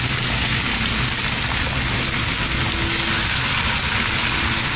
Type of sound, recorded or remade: recorded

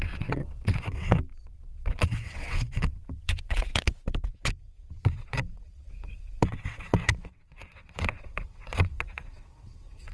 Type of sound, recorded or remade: remade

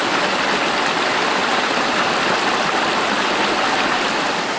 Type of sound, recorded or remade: recorded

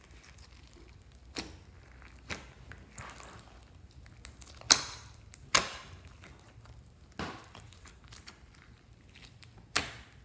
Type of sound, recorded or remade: recorded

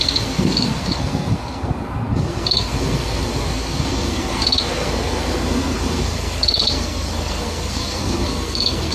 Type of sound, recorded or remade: remade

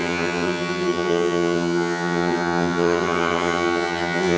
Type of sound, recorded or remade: remade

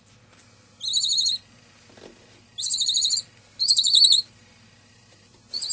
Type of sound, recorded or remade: recorded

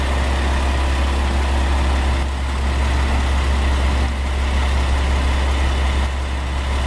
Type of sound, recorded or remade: recorded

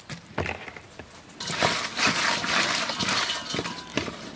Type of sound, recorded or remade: recorded